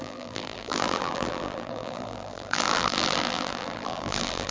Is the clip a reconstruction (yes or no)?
yes